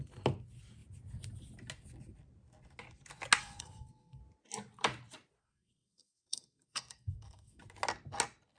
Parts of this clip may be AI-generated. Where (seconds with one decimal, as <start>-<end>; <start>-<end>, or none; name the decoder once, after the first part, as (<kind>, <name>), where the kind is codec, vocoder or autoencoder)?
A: 3.4-4.2 (codec, SNAC); 5.4-7.6